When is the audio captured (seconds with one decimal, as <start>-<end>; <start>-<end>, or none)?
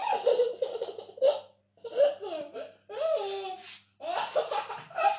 1.0-5.2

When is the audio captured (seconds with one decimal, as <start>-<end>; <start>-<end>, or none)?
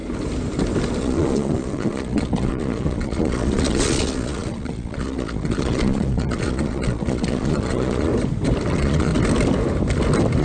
0.0-1.0; 8.1-8.7; 9.1-10.4